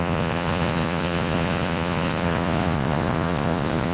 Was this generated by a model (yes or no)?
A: yes